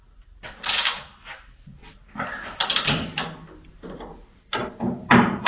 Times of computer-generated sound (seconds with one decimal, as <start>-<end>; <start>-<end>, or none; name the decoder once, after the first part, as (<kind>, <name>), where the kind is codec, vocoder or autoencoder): 4.1-5.5 (vocoder, BigVGAN v2)